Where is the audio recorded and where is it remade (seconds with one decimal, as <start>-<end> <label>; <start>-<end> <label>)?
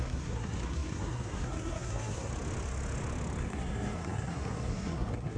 0.0-2.3 remade; 2.3-3.4 recorded; 3.4-5.4 remade